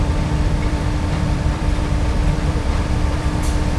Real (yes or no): no